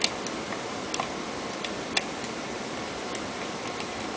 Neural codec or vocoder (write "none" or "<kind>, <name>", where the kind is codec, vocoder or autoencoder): none